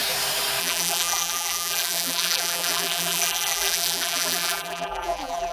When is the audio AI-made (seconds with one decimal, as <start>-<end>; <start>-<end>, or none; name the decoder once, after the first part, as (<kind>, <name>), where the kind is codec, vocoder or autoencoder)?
0.6-5.5 (vocoder, BigVGAN v2)